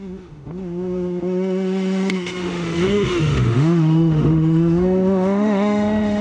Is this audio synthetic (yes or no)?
yes